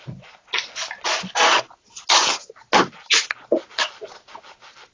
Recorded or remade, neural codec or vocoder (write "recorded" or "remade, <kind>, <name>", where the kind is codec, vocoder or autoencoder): recorded